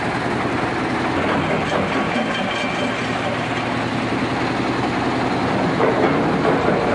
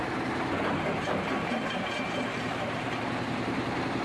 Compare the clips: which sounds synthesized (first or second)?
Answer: second